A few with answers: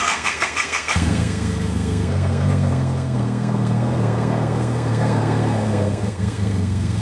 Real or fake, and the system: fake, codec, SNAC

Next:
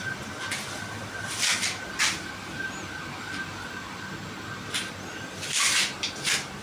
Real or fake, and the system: real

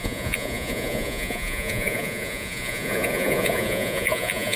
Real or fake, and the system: fake, vocoder, Vocos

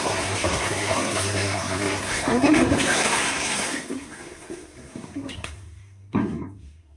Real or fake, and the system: fake, codec, SNAC